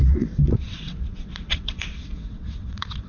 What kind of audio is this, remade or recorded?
remade